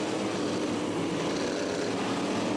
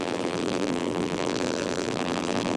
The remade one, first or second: second